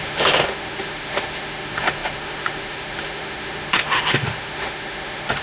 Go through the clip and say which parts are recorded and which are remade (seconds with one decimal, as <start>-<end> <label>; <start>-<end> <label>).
0.0-5.4 remade